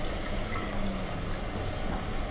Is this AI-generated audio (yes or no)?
no